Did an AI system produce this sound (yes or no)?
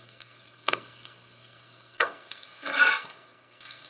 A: yes